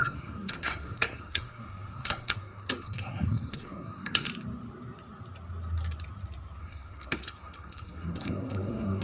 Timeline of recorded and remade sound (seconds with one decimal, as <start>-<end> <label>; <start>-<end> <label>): 0.0-4.3 remade; 4.3-6.6 recorded; 6.6-9.0 remade

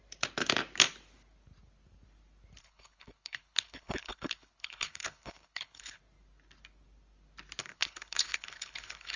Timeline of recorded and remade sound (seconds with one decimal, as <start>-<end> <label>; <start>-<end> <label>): 0.0-2.6 recorded; 2.6-6.0 remade; 6.0-7.6 recorded; 7.6-9.2 remade

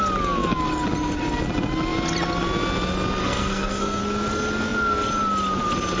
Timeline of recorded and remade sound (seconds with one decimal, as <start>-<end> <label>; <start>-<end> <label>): 0.0-3.2 recorded; 3.2-4.0 remade; 4.0-6.0 recorded

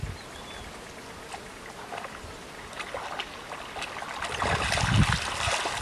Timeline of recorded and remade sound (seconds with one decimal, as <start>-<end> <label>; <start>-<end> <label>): 0.0-5.8 recorded

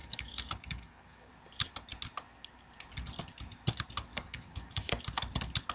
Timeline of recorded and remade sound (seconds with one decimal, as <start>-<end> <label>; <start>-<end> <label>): 0.0-1.3 remade; 1.3-4.1 recorded; 4.1-5.0 remade; 5.0-5.7 recorded

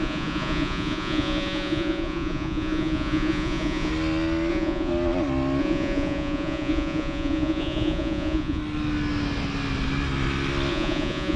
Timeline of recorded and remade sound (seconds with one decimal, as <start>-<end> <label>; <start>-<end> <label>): 0.0-3.9 remade; 3.9-4.5 recorded; 4.5-4.9 remade; 4.9-5.6 recorded; 5.6-8.6 remade; 8.6-10.7 recorded; 10.7-11.4 remade

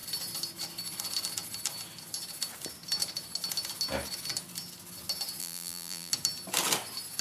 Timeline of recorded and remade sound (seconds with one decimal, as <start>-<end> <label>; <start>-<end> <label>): 0.0-5.4 recorded; 5.4-6.1 remade; 6.1-7.2 recorded